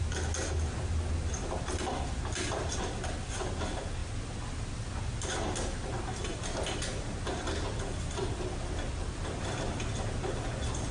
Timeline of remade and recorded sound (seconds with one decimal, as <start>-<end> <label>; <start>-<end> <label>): 0.0-10.9 recorded